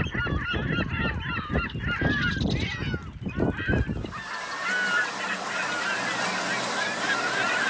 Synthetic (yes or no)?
no